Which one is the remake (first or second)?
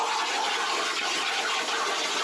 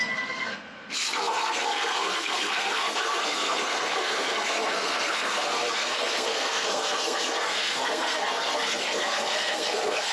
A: second